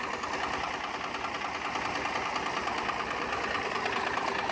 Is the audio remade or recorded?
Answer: recorded